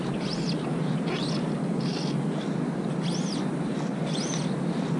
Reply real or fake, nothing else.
real